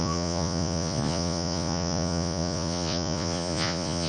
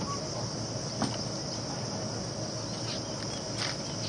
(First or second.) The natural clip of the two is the second